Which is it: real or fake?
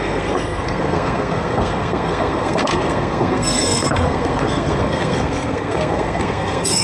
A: fake